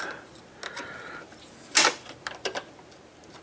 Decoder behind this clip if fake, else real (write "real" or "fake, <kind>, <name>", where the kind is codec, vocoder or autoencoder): real